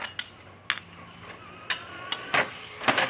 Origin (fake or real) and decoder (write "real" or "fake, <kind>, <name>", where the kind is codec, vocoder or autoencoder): real